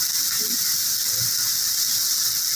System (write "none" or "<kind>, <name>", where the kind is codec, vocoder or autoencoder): none